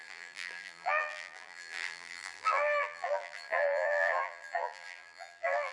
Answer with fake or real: fake